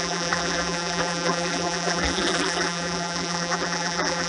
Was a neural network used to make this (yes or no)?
yes